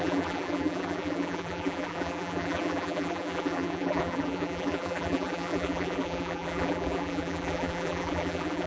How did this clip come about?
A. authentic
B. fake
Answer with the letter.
B